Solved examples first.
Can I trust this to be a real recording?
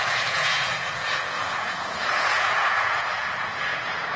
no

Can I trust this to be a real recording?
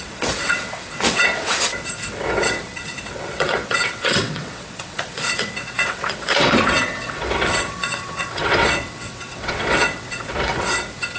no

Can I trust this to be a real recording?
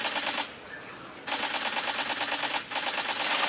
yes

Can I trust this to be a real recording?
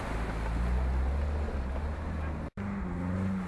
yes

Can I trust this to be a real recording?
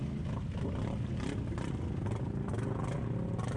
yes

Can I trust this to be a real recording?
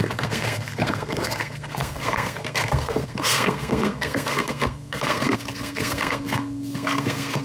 no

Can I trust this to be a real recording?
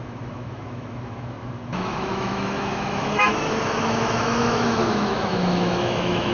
no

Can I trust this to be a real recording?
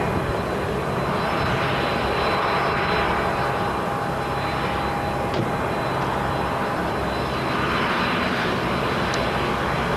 yes